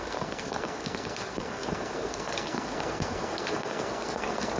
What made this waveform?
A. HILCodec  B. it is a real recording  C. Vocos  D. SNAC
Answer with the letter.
D